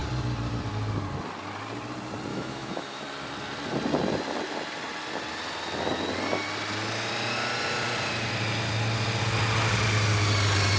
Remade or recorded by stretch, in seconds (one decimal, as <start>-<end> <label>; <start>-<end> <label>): 0.0-2.3 recorded; 2.3-3.0 remade; 3.0-10.8 recorded